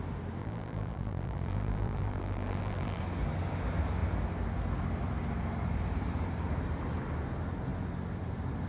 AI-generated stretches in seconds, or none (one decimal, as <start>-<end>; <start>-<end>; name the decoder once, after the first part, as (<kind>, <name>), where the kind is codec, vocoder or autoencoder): 0.4-3.0 (vocoder, BigVGAN v2)